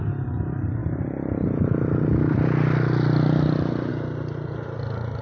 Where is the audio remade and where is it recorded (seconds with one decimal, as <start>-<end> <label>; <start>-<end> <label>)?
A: 0.0-5.2 recorded